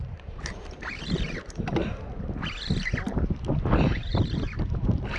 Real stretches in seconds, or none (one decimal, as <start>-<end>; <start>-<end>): 1.4-3.5